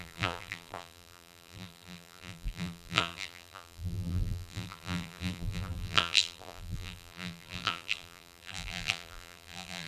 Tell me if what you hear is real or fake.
fake